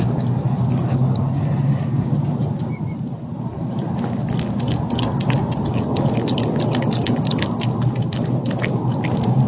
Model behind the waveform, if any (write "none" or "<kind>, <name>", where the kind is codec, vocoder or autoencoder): none